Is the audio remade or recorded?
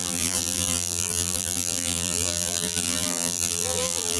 remade